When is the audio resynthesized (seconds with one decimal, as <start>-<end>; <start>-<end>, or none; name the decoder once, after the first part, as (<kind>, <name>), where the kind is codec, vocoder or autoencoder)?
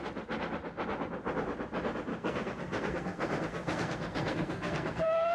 2.1-5.3 (codec, SNAC)